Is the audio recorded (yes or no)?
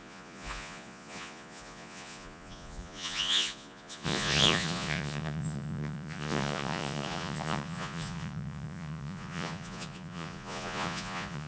no